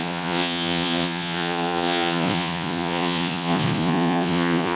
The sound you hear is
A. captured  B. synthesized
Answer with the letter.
B